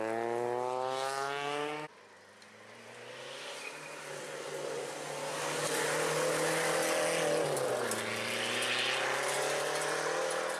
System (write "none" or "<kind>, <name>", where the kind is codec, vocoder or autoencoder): none